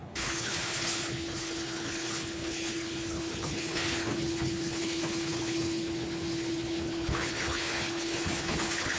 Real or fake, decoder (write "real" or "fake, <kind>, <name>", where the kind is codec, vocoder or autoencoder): fake, codec, HILCodec